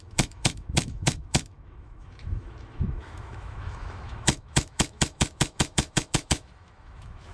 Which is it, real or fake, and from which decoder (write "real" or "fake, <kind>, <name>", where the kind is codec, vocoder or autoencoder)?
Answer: fake, autoencoder, DAC-VAE